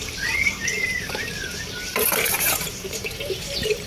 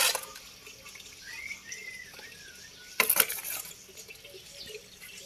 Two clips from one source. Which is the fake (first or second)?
first